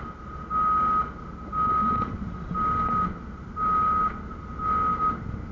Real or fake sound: real